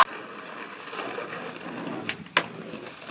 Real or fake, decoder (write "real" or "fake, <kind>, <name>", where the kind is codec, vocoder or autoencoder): real